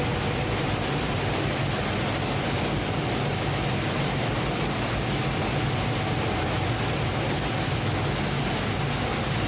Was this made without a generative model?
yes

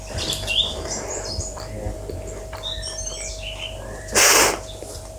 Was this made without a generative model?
no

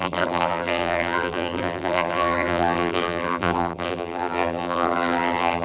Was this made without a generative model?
no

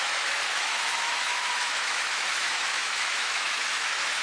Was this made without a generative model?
no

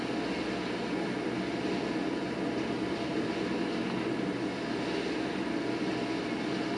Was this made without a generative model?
yes